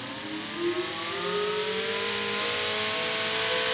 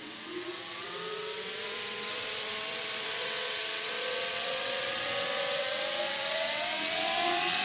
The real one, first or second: first